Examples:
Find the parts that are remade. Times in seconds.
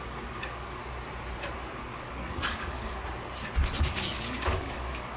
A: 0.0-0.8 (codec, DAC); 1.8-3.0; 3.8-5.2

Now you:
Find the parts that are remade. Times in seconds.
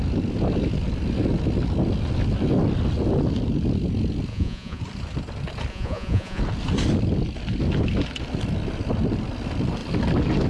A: 4.3-4.8 (vocoder, Vocos); 5.7-6.4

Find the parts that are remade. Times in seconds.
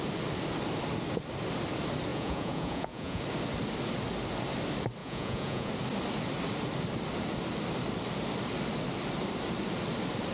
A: 2.1-3.2 (vocoder, Vocos); 5.0-5.7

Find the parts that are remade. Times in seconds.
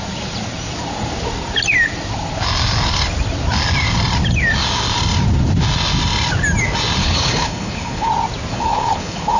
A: 7.0-8.1 (codec, HILCodec); 8.5-9.4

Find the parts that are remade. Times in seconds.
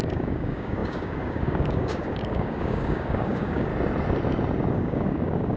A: 0.0-3.7 (codec, DAC); 4.7-5.6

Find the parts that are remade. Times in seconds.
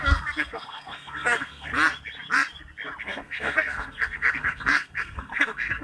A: 0.0-1.7 (codec, SNAC); 3.0-5.8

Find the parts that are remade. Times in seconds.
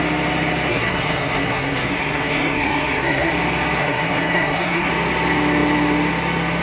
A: 0.7-3.3 (codec, SNAC); 3.8-4.9